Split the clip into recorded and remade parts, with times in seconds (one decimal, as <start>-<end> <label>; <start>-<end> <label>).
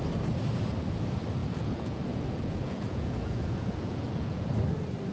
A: 0.0-1.4 recorded; 1.4-4.5 remade; 4.5-5.1 recorded